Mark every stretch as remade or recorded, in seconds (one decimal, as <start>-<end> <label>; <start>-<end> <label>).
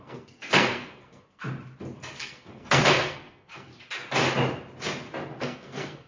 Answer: 0.0-1.4 remade; 1.4-2.2 recorded; 2.2-3.7 remade; 3.7-5.4 recorded; 5.4-6.1 remade